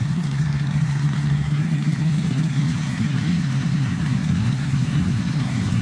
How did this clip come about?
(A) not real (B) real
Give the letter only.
A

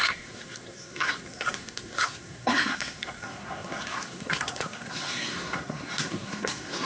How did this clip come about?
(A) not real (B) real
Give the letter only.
A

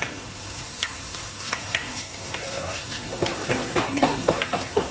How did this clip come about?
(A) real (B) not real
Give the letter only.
B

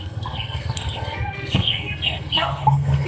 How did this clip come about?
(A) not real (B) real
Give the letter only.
A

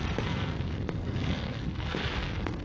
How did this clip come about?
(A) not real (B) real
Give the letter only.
A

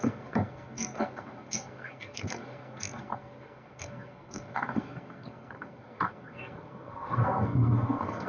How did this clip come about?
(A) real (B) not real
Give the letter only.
B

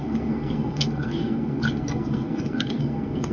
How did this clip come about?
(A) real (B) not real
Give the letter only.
B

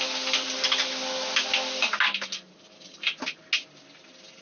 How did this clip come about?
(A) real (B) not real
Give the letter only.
A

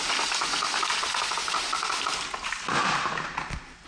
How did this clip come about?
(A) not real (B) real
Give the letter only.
B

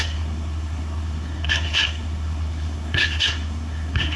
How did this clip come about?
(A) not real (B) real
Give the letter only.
A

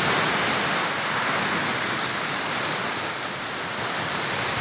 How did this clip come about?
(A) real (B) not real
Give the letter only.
A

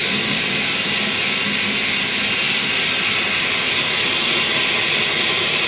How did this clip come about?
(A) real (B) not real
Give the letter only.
A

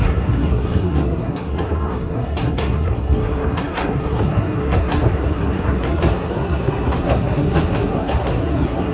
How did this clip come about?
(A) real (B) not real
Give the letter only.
B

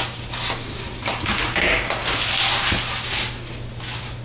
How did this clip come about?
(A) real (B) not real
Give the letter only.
A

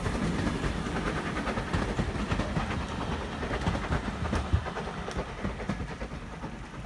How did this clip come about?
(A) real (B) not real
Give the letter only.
A